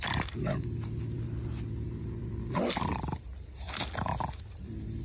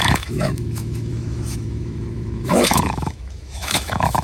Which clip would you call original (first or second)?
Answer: first